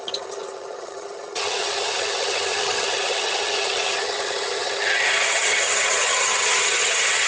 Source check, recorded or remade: remade